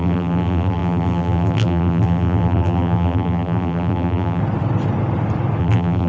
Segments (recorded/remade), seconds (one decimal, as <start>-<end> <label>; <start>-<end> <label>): 0.0-4.4 remade; 4.4-5.6 recorded; 5.6-6.1 remade